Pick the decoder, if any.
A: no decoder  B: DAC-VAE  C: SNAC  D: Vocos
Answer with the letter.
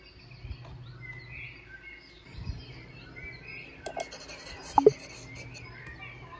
A